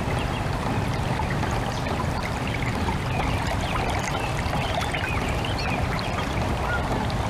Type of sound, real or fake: fake